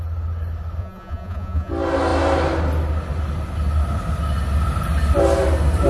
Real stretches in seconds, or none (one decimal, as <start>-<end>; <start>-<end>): 0.0-0.8; 1.7-5.9